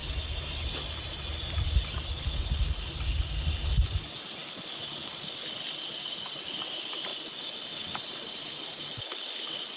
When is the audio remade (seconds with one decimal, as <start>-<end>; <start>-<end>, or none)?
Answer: none